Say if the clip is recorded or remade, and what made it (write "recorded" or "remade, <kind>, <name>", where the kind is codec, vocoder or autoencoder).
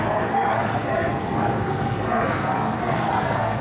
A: remade, codec, SNAC